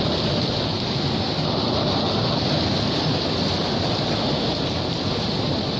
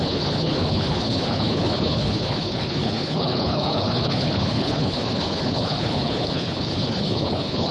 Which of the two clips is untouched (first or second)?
first